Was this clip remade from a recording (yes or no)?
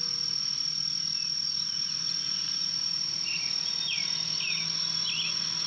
no